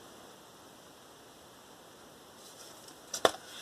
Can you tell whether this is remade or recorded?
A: recorded